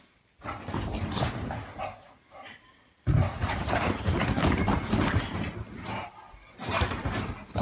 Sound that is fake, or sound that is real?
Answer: real